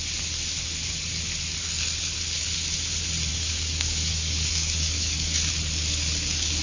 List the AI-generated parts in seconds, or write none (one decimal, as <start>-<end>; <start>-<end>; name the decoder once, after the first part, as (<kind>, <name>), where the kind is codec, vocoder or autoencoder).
3.3-5.5 (codec, DAC)